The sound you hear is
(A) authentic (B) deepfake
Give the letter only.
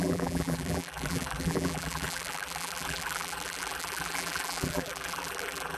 B